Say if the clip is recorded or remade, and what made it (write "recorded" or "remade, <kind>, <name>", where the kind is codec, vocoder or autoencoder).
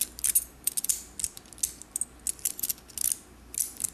recorded